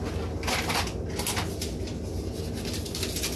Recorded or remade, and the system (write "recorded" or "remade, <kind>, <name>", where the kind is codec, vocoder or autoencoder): recorded